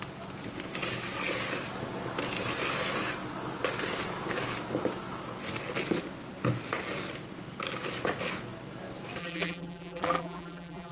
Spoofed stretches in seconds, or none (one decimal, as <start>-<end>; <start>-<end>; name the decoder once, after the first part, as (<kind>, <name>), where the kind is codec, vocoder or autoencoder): 9.2-10.9 (vocoder, BigVGAN v2)